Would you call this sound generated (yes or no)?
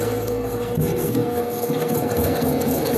yes